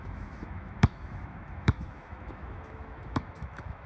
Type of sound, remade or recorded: remade